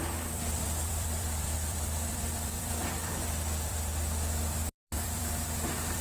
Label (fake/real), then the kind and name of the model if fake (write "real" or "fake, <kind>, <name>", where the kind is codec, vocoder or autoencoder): fake, vocoder, BigVGAN v2